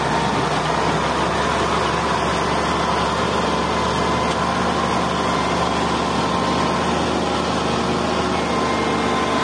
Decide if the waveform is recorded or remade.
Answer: recorded